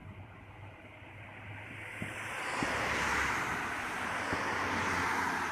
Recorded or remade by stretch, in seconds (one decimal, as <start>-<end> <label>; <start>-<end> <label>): 0.0-5.5 recorded